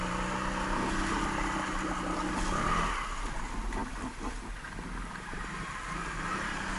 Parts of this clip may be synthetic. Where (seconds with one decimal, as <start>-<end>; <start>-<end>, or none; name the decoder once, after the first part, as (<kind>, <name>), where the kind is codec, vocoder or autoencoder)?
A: none